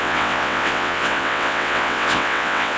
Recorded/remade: remade